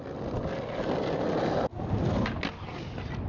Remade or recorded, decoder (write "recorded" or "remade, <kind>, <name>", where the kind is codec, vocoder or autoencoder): recorded